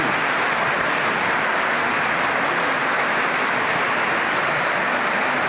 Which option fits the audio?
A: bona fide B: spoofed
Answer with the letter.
A